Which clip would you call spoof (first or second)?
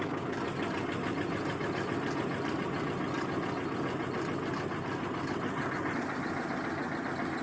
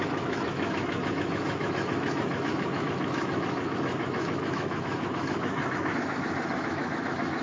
second